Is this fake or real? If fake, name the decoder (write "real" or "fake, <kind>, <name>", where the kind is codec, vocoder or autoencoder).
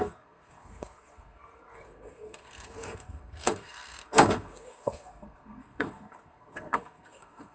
fake, codec, SNAC